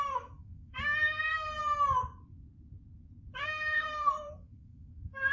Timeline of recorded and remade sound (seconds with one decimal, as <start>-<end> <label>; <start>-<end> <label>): 0.0-1.6 remade; 1.6-3.4 recorded; 3.4-5.3 remade